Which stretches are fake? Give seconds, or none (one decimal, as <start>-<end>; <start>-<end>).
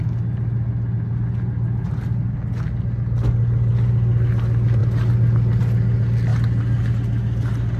none